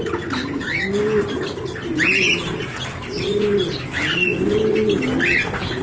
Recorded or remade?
recorded